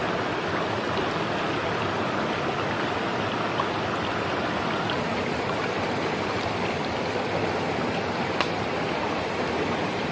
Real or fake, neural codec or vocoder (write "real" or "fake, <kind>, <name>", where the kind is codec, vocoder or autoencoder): real